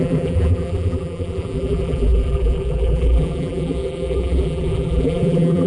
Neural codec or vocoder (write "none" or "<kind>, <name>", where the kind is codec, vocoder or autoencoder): vocoder, BigVGAN v2